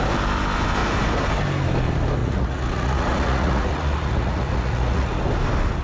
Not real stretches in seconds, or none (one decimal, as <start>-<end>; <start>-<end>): 2.2-5.2